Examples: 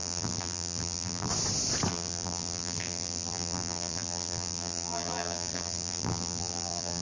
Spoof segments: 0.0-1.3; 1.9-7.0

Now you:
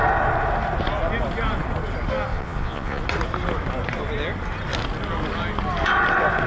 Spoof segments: 2.3-3.0

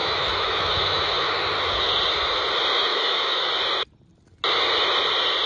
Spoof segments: 0.0-1.3; 2.9-3.5

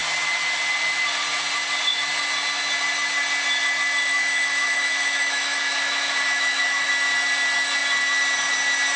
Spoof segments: 4.1-6.9